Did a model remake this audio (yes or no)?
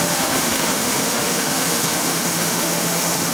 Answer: yes